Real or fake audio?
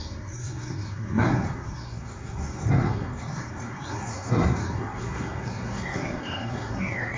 fake